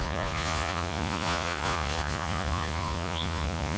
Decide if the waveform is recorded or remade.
remade